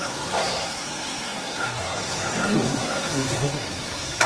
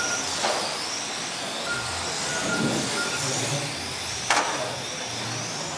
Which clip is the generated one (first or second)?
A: first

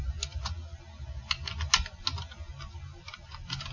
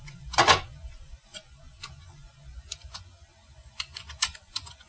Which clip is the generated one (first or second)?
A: second